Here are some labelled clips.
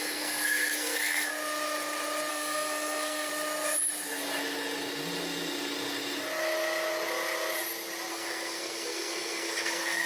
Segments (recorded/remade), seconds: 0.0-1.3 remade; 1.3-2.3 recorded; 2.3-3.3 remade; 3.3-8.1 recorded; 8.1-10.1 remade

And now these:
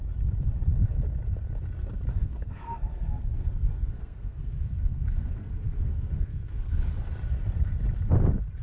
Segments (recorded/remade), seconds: 0.0-2.1 recorded; 2.1-6.9 remade; 6.9-8.6 recorded

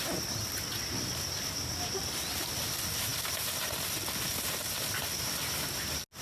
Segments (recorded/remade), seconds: 0.0-6.2 recorded

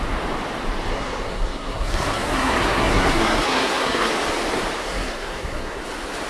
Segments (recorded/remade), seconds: 0.0-0.9 recorded; 0.9-4.1 remade; 4.1-4.8 recorded; 4.8-5.8 remade; 5.8-6.3 recorded

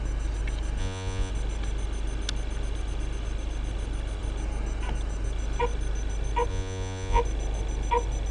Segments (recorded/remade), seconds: 0.0-0.8 recorded; 0.8-1.3 remade; 1.3-6.5 recorded; 6.5-7.2 remade; 7.2-8.3 recorded

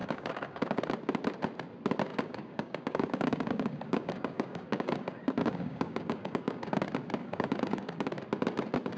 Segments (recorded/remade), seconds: 0.0-0.8 remade; 0.8-2.1 recorded; 2.1-6.8 remade; 6.8-7.2 recorded; 7.2-8.1 remade; 8.1-9.0 recorded

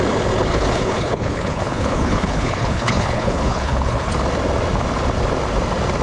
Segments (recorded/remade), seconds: 0.0-0.5 recorded; 0.5-4.1 remade; 4.1-6.0 recorded